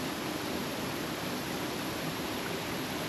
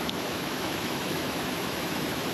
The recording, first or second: first